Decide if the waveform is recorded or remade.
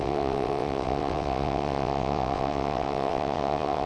remade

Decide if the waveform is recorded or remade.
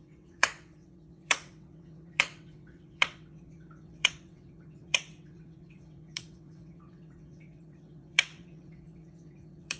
remade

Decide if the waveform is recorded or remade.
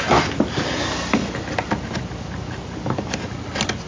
recorded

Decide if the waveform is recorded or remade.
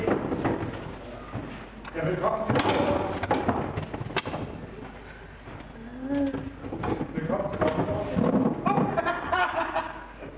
recorded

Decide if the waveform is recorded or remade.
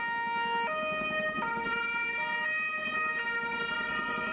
recorded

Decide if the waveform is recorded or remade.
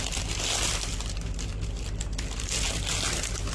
recorded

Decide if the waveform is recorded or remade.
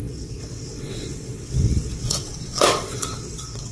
remade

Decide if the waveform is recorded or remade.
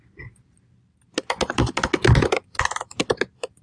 recorded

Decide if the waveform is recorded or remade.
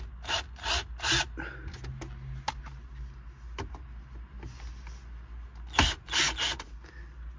recorded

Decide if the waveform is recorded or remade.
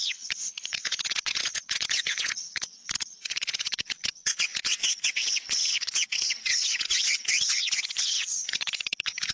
remade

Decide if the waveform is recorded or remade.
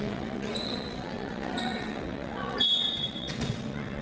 remade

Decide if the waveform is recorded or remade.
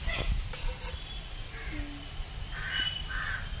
recorded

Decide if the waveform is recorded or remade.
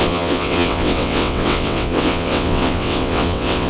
remade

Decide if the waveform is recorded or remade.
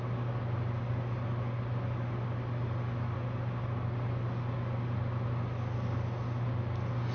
recorded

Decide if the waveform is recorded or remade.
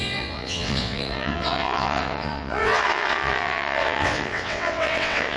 remade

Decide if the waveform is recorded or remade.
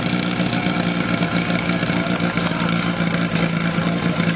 recorded